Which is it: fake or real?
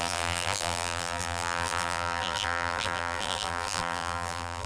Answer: fake